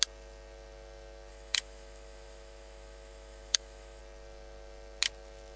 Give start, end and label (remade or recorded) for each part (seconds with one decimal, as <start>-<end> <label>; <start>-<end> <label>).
0.0-1.3 recorded; 1.3-4.0 remade; 4.0-5.6 recorded